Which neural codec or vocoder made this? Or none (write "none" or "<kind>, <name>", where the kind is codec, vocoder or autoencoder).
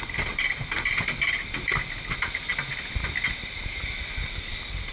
none